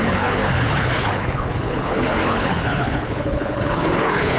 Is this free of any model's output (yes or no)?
no